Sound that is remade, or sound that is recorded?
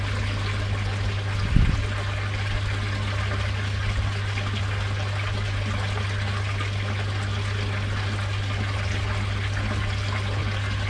recorded